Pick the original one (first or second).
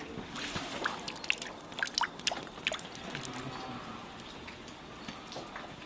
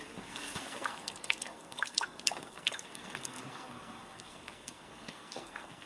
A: first